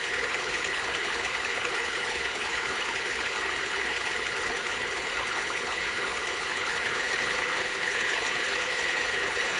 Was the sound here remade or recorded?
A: remade